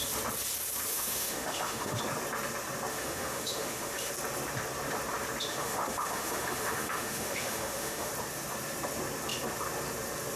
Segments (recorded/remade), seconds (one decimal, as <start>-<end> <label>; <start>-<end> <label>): 0.0-0.9 recorded; 0.9-2.0 remade; 2.0-2.9 recorded; 2.9-4.1 remade; 4.1-5.5 recorded; 5.5-8.1 remade; 8.1-10.4 recorded